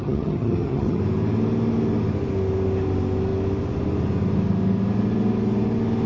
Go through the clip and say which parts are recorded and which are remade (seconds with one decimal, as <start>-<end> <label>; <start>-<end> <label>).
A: 0.0-1.0 remade; 1.0-6.1 recorded